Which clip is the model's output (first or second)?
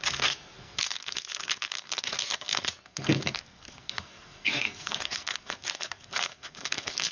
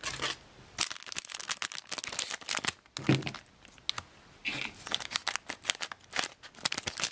first